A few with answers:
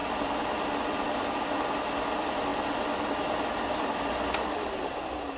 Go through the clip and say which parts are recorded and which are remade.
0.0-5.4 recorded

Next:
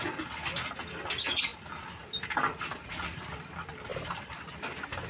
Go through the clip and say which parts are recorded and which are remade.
0.0-3.9 recorded; 3.9-4.5 remade; 4.5-5.1 recorded

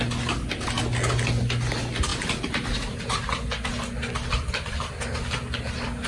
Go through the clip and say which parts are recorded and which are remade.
0.0-6.1 recorded

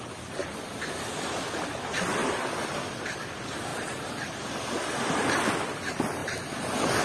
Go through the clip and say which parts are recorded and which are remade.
0.0-0.4 recorded; 0.4-1.5 remade; 1.5-2.2 recorded; 2.2-3.3 remade; 3.3-3.7 recorded; 3.7-5.8 remade; 5.8-7.0 recorded